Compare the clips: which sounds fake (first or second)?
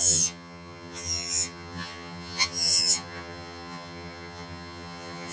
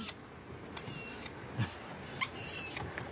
first